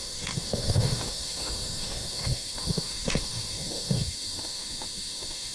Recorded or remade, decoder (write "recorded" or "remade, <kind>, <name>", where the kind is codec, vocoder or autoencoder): remade, autoencoder, DAC-VAE